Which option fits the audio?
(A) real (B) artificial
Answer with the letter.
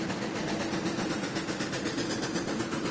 A